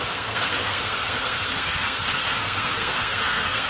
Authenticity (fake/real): fake